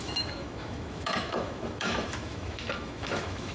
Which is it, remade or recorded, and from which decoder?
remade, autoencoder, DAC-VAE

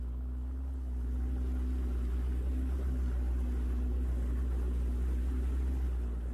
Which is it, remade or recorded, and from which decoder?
recorded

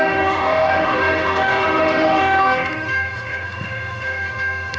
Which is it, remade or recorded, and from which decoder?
remade, autoencoder, DAC-VAE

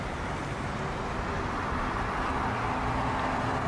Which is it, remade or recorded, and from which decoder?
recorded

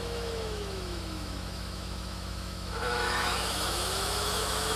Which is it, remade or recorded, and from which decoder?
remade, autoencoder, DAC-VAE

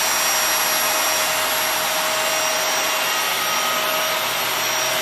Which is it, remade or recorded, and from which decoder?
recorded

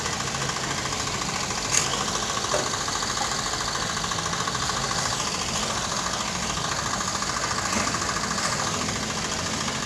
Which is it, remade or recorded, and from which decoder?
recorded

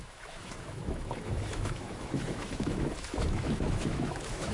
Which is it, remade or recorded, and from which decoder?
remade, autoencoder, DAC-VAE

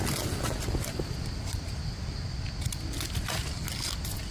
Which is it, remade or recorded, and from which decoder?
recorded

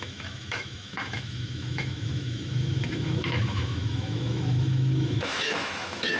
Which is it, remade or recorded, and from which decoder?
remade, autoencoder, DAC-VAE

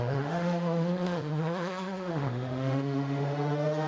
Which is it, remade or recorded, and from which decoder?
remade, autoencoder, DAC-VAE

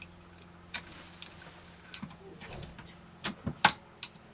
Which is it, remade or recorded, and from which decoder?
recorded